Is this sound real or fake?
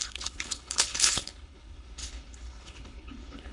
fake